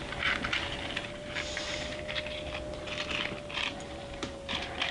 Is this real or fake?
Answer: real